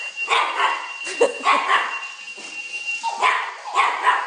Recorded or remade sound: recorded